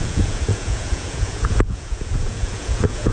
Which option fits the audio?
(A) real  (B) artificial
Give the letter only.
B